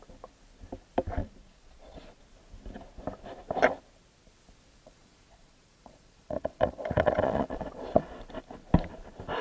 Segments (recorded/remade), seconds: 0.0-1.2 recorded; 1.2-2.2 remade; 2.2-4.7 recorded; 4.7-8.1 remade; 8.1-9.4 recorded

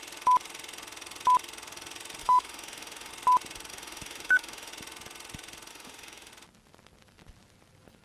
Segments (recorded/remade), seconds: 0.0-2.2 recorded; 2.2-3.1 remade; 3.1-3.7 recorded; 3.7-4.7 remade; 4.7-5.7 recorded; 5.7-6.3 remade; 6.3-8.0 recorded

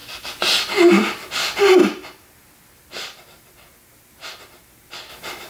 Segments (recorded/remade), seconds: 0.0-5.5 recorded

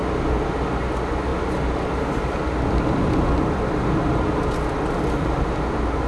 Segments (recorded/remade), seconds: 0.0-6.1 recorded

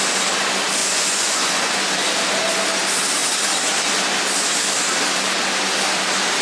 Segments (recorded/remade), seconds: 0.0-0.8 recorded; 0.8-1.7 remade; 1.7-6.4 recorded

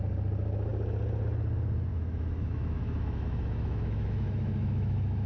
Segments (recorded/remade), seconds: 0.0-1.9 recorded; 1.9-5.3 remade

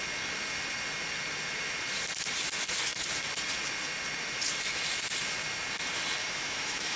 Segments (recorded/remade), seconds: 0.0-6.2 recorded; 6.2-7.0 remade